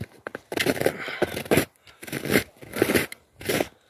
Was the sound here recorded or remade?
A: recorded